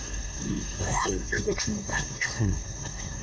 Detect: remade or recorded remade